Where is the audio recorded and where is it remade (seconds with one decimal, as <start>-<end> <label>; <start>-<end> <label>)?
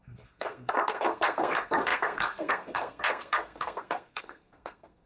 0.0-5.1 remade